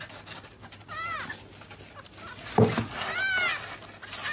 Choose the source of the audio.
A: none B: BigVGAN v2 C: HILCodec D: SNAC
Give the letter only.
A